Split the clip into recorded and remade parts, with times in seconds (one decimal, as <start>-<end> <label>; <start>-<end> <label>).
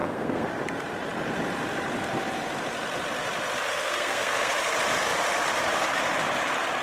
0.0-0.5 remade; 0.5-3.7 recorded; 3.7-4.5 remade; 4.5-6.8 recorded